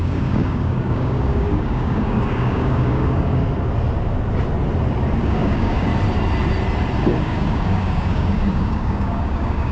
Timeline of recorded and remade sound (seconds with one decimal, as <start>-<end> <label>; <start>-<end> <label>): 0.0-3.4 remade; 3.4-5.2 recorded; 5.2-5.9 remade; 5.9-7.2 recorded; 7.2-9.7 remade